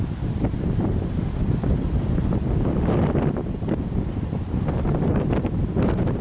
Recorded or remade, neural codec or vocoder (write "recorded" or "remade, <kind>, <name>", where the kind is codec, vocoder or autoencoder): remade, vocoder, BigVGAN v2